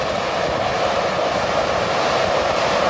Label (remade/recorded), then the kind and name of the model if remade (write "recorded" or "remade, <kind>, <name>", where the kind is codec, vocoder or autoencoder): recorded